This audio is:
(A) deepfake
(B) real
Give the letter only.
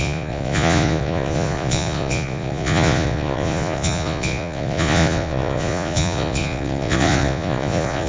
A